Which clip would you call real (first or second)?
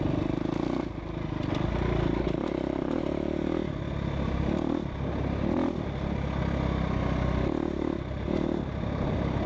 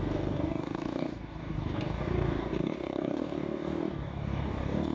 first